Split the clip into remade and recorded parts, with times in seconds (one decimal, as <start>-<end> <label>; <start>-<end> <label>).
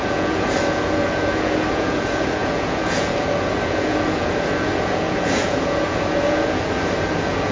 0.0-7.5 remade